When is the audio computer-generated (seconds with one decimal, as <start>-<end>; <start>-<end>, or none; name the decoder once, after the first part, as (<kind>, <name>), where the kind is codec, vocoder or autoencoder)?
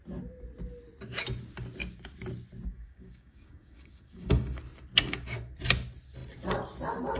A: 2.7-4.6 (codec, DAC)